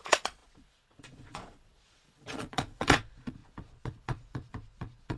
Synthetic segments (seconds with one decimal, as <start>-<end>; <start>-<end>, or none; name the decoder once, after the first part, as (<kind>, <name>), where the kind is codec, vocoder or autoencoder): 0.0-5.2 (vocoder, Vocos)